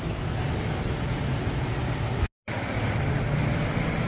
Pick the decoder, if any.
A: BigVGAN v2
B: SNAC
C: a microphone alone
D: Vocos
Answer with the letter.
C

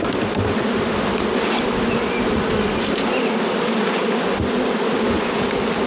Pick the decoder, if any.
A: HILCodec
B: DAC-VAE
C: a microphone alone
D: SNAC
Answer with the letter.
C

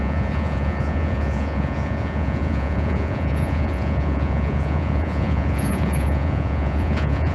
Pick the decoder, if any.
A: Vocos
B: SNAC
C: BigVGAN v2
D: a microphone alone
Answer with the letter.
A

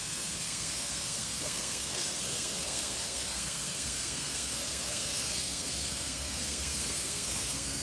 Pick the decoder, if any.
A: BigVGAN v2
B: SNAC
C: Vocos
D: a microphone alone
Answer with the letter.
B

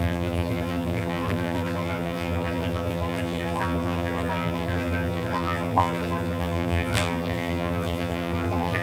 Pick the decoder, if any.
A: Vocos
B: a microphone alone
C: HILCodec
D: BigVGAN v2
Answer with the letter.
D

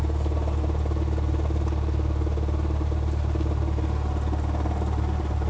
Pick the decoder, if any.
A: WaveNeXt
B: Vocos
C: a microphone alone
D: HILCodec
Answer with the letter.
C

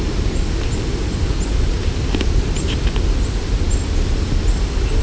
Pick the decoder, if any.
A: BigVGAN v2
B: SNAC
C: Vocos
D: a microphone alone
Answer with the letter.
D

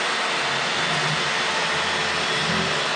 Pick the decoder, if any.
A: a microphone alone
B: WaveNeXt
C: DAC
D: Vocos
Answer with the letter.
A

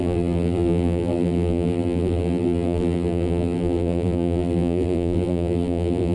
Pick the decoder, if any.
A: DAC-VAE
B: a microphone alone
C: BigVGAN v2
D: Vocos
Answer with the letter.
C